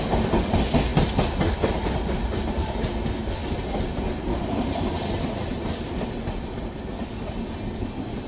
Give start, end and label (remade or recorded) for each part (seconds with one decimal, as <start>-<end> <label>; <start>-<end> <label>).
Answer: 0.0-0.9 recorded; 0.9-2.9 remade; 2.9-3.4 recorded; 3.4-4.8 remade; 4.8-8.3 recorded